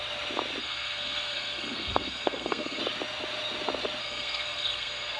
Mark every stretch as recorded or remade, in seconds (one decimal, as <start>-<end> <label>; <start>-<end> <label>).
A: 0.0-0.6 recorded; 0.6-2.8 remade; 2.8-4.0 recorded; 4.0-5.2 remade